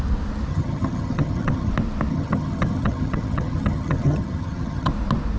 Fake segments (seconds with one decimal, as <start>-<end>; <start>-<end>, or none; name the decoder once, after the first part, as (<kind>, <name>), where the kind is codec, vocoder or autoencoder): 0.5-1.7 (vocoder, HiFi-GAN); 2.1-4.9

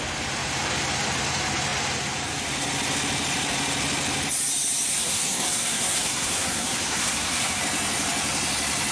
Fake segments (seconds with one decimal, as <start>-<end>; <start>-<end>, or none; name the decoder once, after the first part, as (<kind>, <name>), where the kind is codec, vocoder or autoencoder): 4.9-7.6 (codec, SNAC)

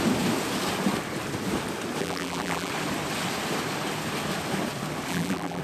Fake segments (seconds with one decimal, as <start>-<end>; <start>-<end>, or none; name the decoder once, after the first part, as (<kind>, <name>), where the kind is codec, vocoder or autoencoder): 2.0-2.7 (vocoder, BigVGAN v2); 5.1-5.6

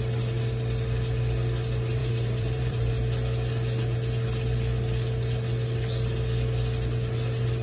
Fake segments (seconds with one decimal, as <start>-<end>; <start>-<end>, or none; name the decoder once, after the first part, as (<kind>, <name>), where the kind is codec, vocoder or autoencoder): 2.0-2.9 (vocoder, BigVGAN v2)

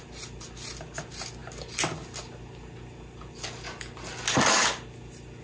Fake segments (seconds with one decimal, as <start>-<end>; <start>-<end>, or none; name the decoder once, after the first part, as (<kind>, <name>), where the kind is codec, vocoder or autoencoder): none